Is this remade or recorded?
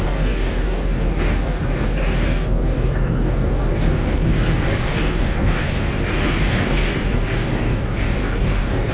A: remade